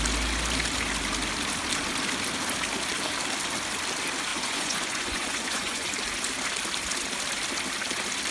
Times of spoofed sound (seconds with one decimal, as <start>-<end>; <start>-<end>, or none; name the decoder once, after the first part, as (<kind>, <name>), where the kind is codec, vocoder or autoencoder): 4.3-5.9 (vocoder, Vocos)